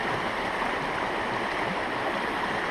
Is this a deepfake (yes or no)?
no